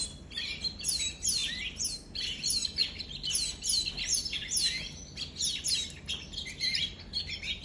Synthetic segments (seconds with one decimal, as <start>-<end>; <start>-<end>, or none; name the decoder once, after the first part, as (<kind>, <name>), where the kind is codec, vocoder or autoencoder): none